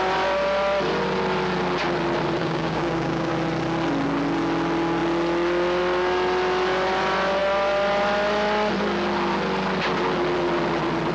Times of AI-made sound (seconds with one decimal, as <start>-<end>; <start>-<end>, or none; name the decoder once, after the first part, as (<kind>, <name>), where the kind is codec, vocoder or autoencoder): 2.4-3.3 (codec, DAC)